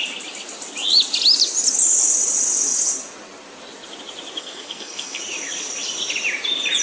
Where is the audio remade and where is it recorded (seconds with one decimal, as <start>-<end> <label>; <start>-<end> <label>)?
0.0-4.4 recorded; 4.4-5.2 remade; 5.2-6.8 recorded